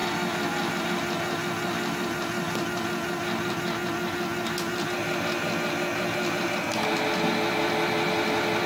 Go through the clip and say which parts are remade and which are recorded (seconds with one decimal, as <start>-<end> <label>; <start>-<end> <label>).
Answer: 0.0-8.7 recorded